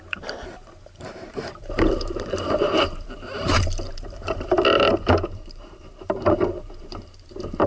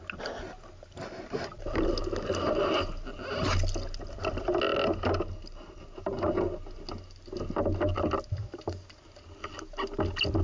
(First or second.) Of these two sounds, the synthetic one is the first